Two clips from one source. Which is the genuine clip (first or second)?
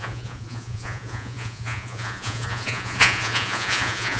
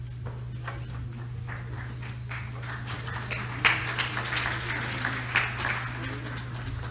second